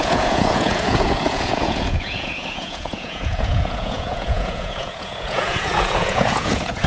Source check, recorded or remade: remade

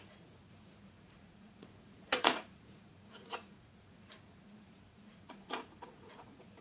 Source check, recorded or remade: remade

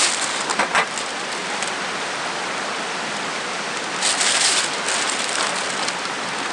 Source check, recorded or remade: recorded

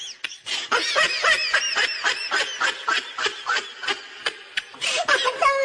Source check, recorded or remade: recorded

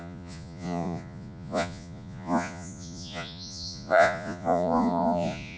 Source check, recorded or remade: remade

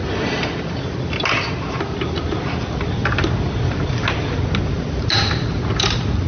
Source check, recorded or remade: recorded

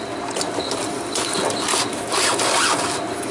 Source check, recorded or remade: recorded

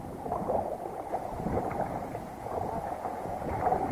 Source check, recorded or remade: remade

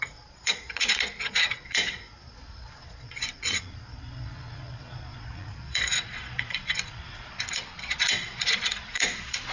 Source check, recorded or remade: remade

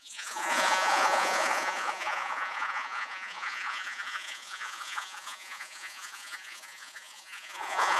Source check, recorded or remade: remade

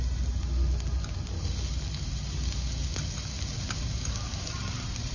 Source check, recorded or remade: recorded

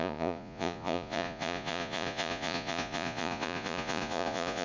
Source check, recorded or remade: remade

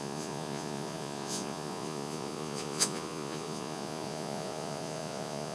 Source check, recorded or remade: remade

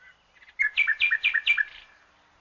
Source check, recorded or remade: recorded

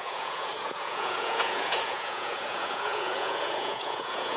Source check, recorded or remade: remade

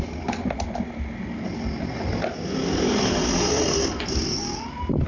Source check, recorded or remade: recorded